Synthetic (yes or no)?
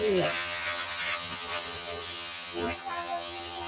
yes